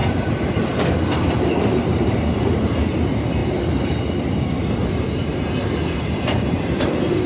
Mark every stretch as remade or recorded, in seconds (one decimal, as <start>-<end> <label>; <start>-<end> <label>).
0.0-3.4 remade; 3.4-6.6 recorded; 6.6-7.3 remade